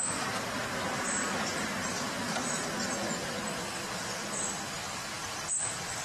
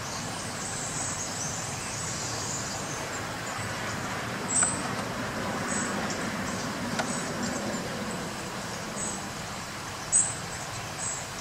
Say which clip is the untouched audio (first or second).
first